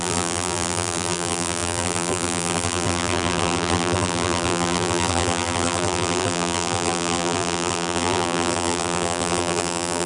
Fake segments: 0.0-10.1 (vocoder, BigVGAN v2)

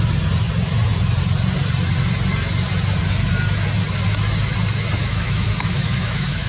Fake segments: 5.0-6.5 (autoencoder, DAC-VAE)

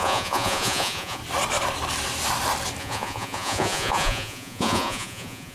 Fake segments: 0.0-1.2 (vocoder, Vocos); 2.8-5.5